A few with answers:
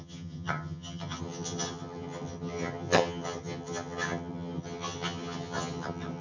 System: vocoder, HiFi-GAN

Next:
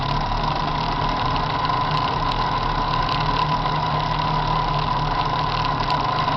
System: none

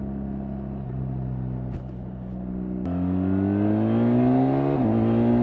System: none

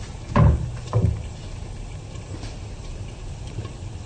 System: none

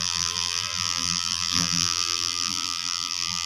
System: vocoder, BigVGAN v2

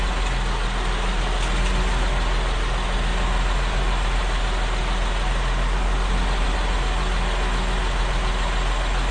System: none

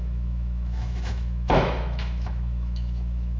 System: autoencoder, DAC-VAE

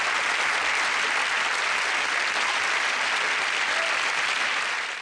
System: none